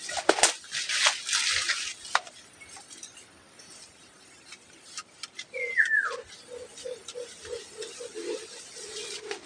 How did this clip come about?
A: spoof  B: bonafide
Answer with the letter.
B